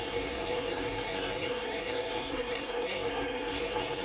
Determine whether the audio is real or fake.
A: fake